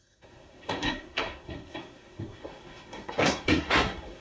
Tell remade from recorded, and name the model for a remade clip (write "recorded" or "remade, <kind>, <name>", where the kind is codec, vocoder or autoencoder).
remade, codec, SNAC